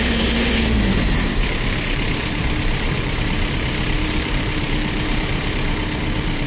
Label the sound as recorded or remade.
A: remade